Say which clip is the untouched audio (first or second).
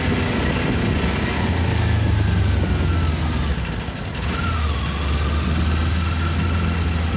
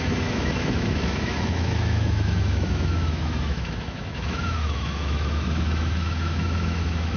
first